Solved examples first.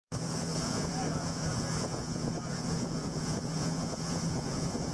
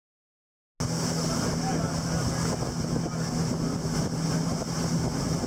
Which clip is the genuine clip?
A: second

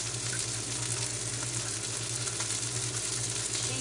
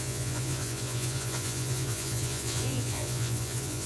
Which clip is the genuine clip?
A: first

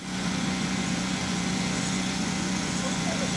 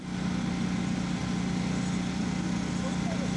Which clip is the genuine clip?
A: second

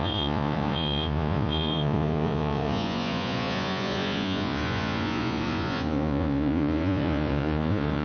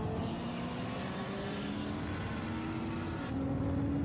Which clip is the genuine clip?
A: second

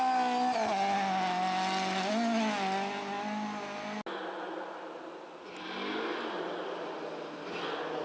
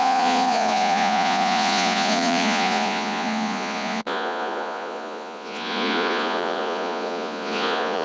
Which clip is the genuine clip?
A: first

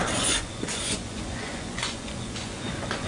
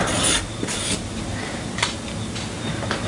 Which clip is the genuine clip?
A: second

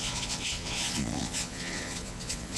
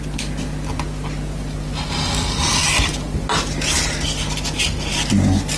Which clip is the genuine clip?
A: second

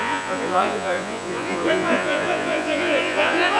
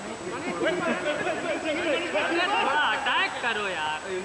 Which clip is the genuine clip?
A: second